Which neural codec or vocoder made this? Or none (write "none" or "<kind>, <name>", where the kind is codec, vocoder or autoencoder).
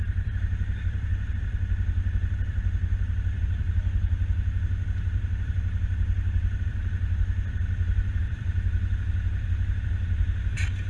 vocoder, BigVGAN v2